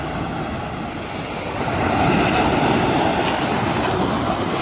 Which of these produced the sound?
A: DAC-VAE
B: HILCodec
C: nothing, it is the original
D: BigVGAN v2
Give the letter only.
C